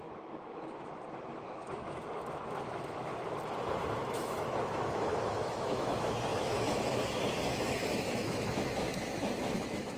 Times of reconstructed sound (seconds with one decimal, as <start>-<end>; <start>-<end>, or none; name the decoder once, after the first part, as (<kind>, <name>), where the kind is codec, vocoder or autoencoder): 0.0-3.1 (autoencoder, DAC-VAE); 3.8-10.0